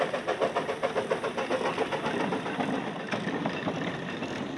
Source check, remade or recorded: recorded